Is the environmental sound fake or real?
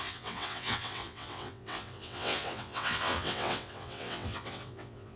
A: fake